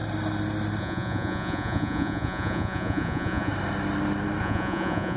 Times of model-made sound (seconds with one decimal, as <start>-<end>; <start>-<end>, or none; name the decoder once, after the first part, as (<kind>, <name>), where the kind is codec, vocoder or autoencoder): 0.8-3.5 (vocoder, Vocos); 4.4-5.2